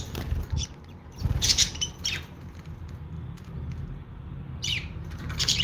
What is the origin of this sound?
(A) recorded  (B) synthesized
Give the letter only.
B